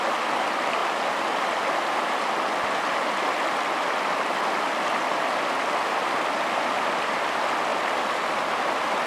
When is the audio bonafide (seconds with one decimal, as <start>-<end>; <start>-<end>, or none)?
0.0-9.1